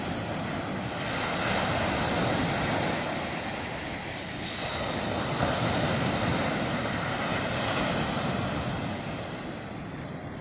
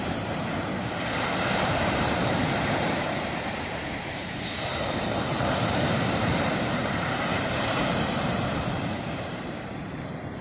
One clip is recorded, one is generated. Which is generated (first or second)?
second